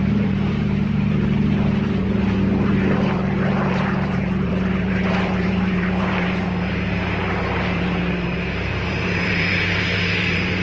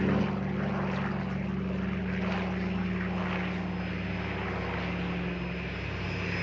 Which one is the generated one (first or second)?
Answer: first